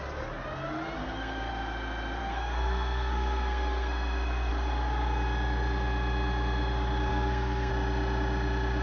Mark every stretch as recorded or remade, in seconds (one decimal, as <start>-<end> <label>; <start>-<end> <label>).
0.0-1.0 recorded; 1.0-1.5 remade; 1.5-2.2 recorded; 2.2-4.5 remade; 4.5-7.1 recorded; 7.1-7.7 remade; 7.7-8.8 recorded